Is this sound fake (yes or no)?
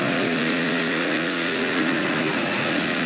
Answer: yes